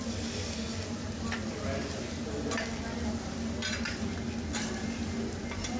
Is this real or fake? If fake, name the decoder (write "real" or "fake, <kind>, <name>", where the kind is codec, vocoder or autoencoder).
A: real